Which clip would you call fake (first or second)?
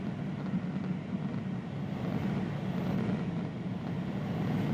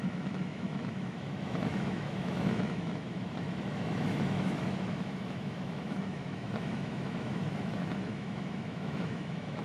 second